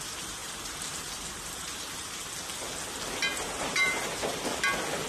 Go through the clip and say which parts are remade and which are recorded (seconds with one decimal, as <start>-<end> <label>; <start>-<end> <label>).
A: 0.0-0.4 recorded; 0.4-2.3 remade; 2.3-3.3 recorded; 3.3-4.2 remade; 4.2-5.1 recorded